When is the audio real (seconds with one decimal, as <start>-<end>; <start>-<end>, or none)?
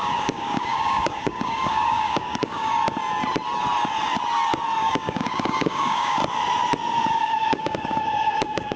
2.8-4.8; 6.2-7.1